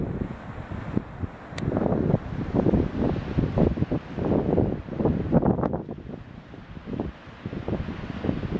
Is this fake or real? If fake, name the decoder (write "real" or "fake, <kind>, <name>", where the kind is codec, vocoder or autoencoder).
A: real